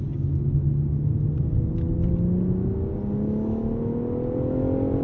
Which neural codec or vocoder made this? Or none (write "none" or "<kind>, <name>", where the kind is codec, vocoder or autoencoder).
none